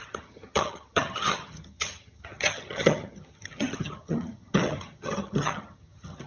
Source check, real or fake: fake